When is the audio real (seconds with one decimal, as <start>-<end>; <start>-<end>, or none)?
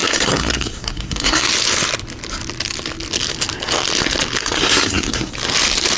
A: 1.5-4.4; 5.3-6.0